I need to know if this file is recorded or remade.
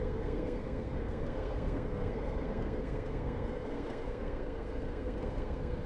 remade